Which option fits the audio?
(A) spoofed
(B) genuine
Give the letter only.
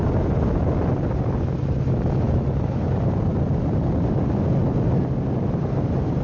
B